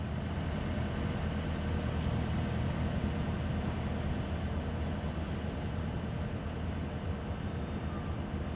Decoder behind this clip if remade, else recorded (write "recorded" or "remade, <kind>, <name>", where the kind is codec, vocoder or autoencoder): recorded